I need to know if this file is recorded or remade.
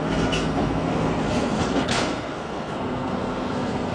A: remade